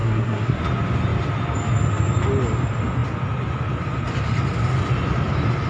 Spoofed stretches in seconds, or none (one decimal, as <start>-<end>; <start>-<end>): 0.0-0.6